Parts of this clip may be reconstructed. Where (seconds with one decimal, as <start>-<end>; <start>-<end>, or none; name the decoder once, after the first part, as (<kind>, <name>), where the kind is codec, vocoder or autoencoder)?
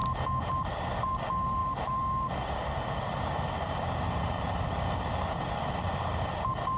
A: 1.6-5.7 (vocoder, BigVGAN v2)